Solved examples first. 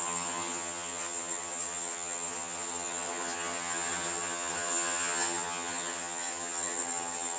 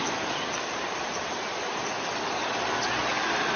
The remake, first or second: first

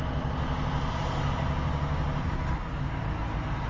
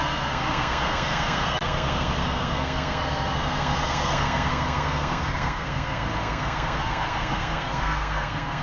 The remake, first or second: second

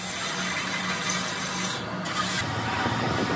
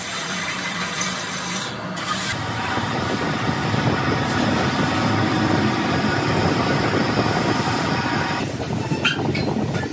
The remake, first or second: second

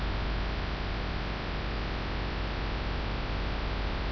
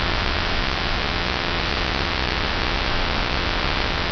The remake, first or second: second